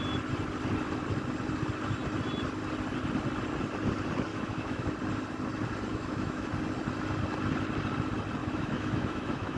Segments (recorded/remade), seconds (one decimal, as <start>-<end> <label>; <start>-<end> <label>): 0.0-4.3 recorded; 4.3-4.9 remade; 4.9-5.9 recorded; 5.9-6.5 remade; 6.5-8.4 recorded; 8.4-9.6 remade